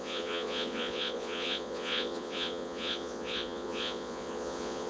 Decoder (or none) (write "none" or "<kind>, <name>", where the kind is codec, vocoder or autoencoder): vocoder, Vocos